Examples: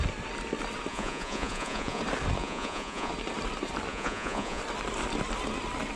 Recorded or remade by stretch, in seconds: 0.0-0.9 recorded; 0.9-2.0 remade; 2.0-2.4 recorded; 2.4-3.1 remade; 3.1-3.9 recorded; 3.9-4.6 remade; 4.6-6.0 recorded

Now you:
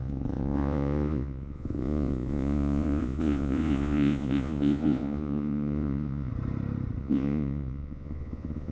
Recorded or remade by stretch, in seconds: 0.0-6.3 remade; 6.3-7.0 recorded; 7.0-8.7 remade

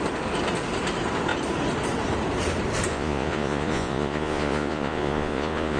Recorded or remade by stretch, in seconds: 0.0-2.9 recorded; 2.9-5.8 remade

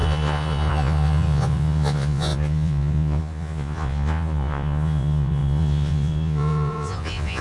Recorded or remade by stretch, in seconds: 0.0-7.4 remade

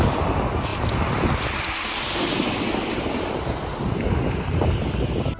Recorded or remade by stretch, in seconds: 0.0-5.4 recorded